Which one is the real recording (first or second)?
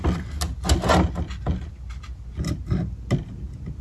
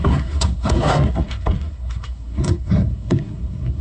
first